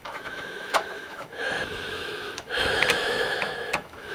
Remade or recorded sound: remade